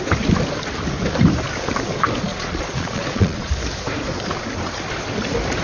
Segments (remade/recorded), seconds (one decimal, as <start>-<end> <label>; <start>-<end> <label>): 0.0-2.3 recorded; 2.3-3.5 remade; 3.5-5.6 recorded